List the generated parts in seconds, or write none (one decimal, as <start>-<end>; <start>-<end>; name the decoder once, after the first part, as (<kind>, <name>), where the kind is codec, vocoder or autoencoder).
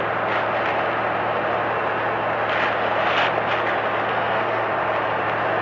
4.1-4.7 (codec, SNAC)